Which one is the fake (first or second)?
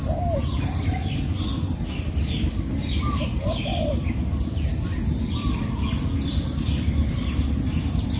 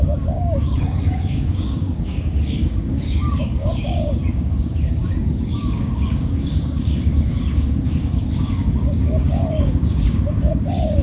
second